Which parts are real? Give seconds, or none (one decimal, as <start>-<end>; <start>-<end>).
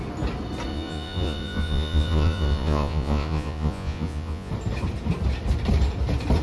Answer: 0.0-0.7; 4.5-6.4